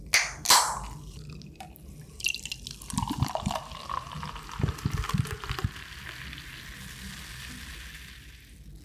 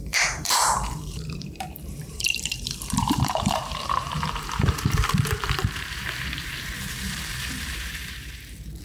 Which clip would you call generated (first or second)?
second